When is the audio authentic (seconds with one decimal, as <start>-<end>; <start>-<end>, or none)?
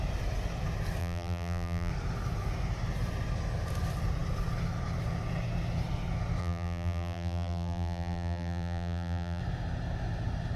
0.0-1.0; 1.9-6.4; 9.4-10.6